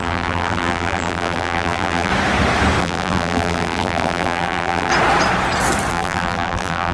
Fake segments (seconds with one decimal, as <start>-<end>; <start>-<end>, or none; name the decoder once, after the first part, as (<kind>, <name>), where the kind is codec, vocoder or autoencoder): 0.0-2.1 (vocoder, BigVGAN v2); 2.8-4.9; 5.9-6.9